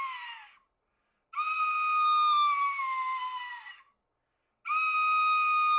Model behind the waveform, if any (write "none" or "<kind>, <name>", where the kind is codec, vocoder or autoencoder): none